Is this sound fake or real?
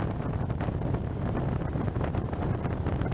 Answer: fake